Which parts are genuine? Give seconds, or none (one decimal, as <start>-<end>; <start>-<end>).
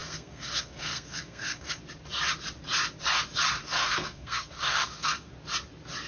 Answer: 1.8-3.6; 5.3-6.1